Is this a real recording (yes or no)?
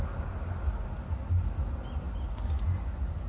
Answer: yes